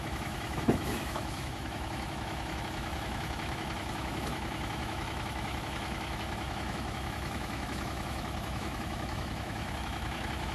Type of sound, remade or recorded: remade